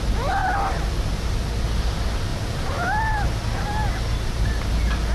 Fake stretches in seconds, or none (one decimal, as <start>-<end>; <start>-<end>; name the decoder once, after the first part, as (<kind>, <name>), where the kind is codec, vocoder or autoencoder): 0.4-1.0 (vocoder, BigVGAN v2); 2.3-3.0